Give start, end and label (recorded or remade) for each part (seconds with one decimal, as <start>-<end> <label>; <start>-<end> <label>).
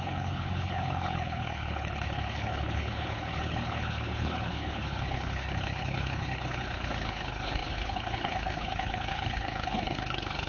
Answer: 0.0-10.5 remade